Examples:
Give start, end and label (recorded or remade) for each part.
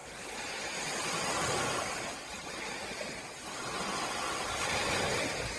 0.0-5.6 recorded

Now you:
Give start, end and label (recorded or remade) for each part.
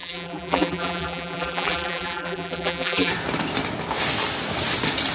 0.0-3.1 remade; 3.1-5.1 recorded